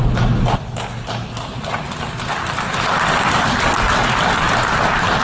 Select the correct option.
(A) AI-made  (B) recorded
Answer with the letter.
B